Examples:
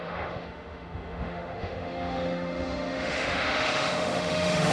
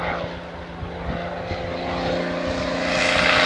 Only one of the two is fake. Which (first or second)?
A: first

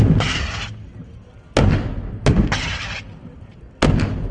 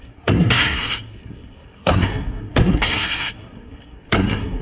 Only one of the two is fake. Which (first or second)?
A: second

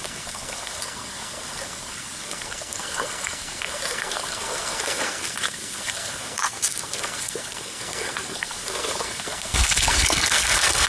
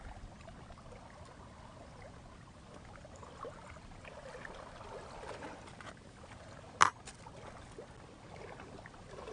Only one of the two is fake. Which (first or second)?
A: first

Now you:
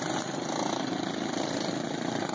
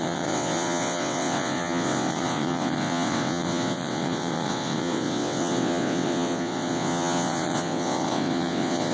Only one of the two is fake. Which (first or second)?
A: second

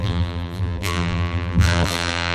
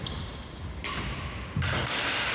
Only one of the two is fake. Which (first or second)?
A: first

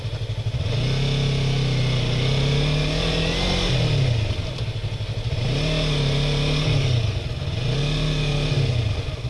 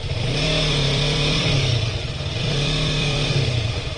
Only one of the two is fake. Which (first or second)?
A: second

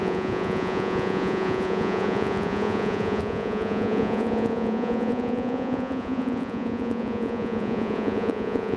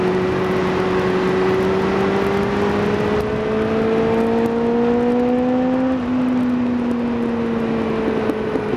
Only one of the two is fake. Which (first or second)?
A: first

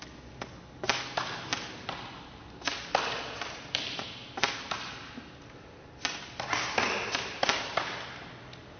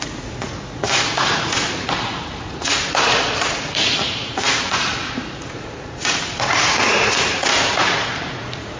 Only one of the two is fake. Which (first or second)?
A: second